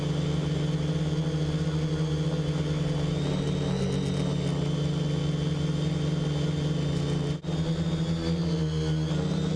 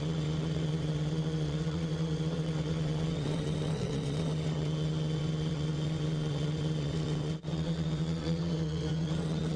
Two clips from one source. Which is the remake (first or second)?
second